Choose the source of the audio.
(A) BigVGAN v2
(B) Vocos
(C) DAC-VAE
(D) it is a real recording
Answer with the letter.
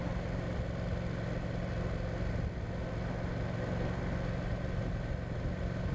D